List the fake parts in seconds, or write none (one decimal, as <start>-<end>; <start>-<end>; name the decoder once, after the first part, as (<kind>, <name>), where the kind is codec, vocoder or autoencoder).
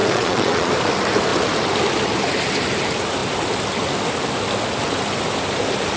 0.0-0.7 (vocoder, Vocos)